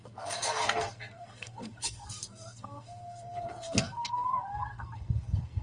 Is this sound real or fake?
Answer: fake